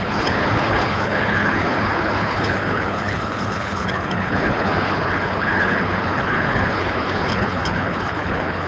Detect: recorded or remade remade